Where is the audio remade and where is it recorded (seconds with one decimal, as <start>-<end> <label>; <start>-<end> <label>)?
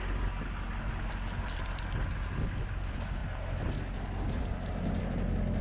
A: 0.0-5.6 recorded